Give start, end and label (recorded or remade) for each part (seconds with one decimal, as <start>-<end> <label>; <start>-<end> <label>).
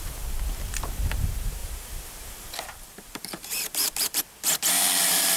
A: 0.0-1.6 recorded; 1.6-4.2 remade; 4.2-5.4 recorded